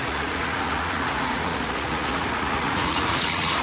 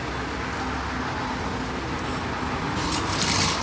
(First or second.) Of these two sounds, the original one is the second